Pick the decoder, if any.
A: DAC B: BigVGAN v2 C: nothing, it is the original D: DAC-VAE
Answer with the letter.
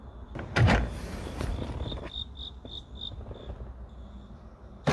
C